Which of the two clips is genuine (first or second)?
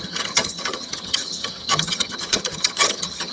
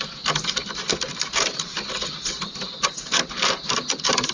second